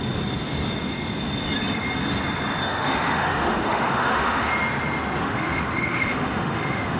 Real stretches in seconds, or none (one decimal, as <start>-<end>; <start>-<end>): 0.0-2.6; 4.5-5.2